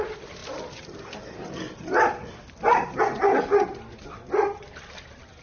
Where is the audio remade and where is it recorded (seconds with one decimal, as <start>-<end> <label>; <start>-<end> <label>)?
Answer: 0.0-5.4 recorded